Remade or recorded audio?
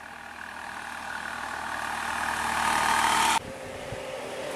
recorded